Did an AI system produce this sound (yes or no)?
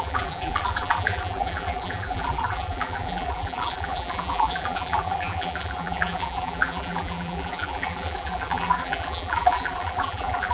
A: yes